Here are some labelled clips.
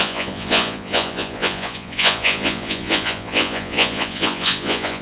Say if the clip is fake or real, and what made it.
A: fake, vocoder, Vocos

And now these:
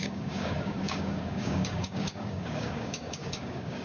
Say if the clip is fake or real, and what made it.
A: fake, codec, DAC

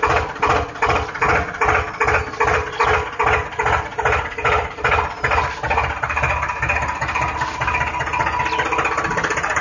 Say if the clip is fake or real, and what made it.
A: real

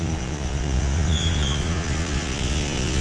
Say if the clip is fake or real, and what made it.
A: fake, vocoder, Vocos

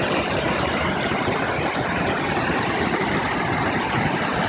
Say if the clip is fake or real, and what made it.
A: real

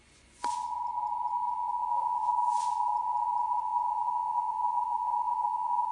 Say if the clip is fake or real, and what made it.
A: fake, vocoder, Vocos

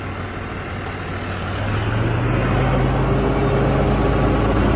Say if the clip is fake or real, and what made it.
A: real